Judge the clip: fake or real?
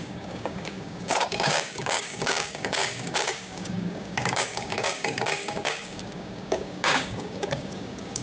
fake